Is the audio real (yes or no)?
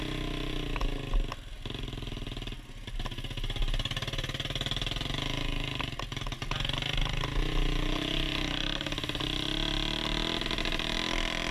yes